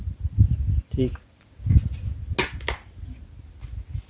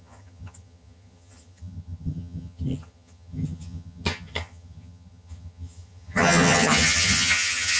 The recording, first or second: first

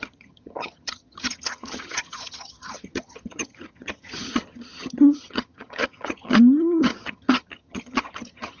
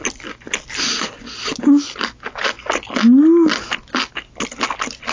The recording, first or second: second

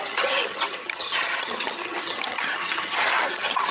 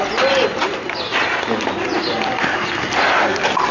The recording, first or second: second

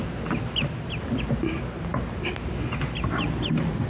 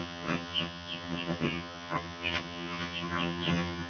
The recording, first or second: first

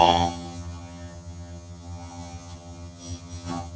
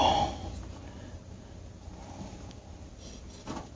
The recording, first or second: second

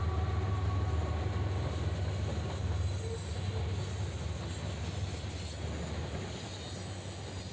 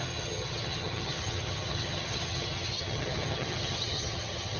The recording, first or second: first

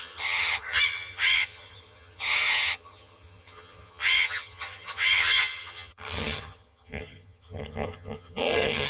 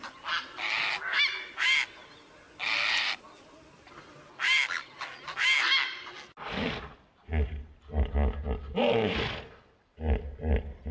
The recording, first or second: second